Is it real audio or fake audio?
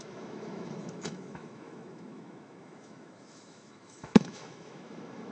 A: fake